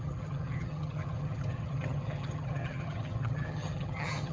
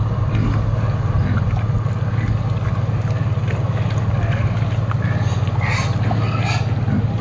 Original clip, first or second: second